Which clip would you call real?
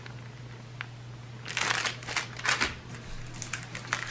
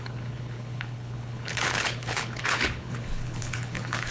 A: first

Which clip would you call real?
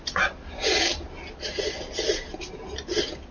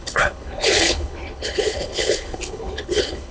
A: first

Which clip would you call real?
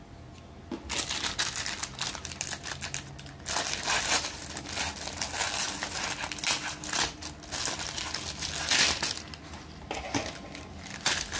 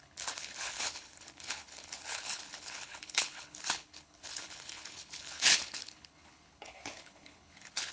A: first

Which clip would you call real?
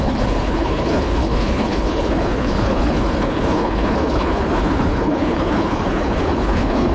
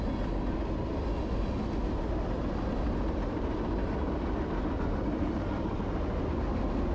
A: second